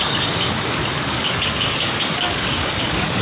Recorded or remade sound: remade